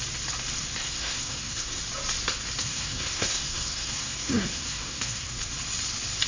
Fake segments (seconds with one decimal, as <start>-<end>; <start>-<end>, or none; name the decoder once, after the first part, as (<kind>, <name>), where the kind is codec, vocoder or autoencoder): 0.8-1.8 (codec, SNAC); 2.6-5.3